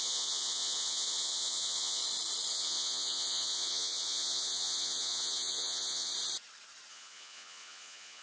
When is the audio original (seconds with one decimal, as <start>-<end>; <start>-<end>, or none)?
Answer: 2.0-2.5; 6.1-6.9